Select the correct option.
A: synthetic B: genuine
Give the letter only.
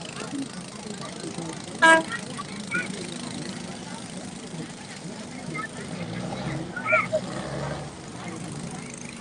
B